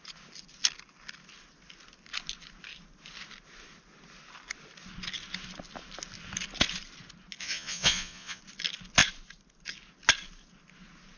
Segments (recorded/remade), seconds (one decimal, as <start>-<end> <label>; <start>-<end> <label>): 0.0-7.4 recorded; 7.4-8.4 remade; 8.4-11.2 recorded